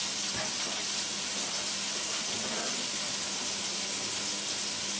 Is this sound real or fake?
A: real